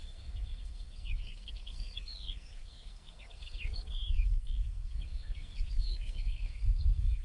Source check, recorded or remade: remade